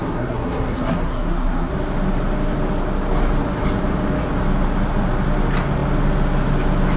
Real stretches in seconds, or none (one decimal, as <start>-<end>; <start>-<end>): 1.7-7.0